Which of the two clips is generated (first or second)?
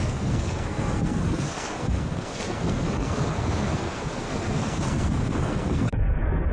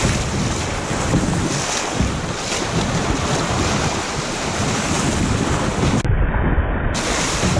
first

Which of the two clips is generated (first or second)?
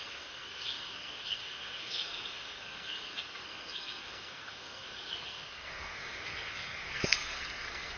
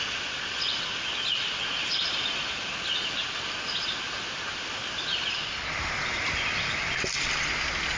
first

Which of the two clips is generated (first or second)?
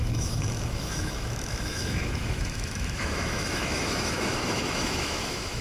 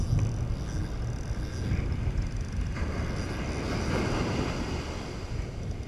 first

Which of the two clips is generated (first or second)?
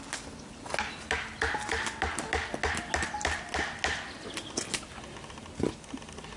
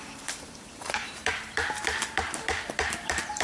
second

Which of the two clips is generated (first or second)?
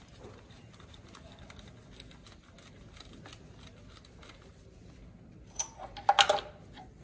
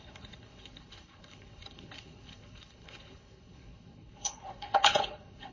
second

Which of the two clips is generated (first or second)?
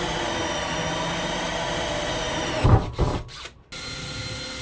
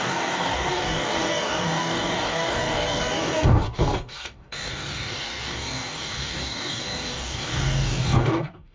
second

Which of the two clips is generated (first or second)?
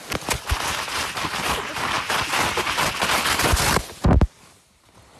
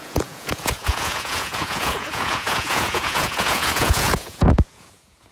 second